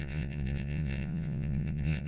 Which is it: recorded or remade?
remade